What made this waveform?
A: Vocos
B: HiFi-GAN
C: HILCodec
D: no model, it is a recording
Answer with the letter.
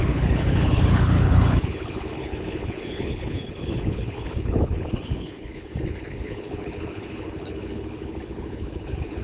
C